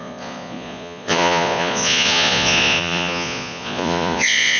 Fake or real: fake